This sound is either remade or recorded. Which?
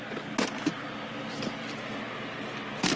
recorded